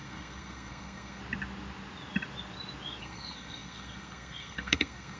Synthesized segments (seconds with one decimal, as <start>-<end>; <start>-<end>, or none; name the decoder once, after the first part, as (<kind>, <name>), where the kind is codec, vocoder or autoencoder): 0.0-1.2 (codec, SNAC); 3.0-5.2